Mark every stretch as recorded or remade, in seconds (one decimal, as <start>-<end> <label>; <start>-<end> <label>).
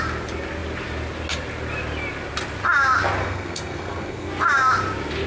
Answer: 0.0-3.2 recorded; 3.2-4.3 remade; 4.3-5.3 recorded